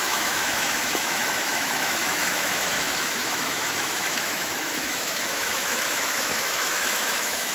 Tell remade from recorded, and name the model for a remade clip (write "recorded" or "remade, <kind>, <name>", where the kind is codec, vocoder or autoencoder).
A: remade, autoencoder, DAC-VAE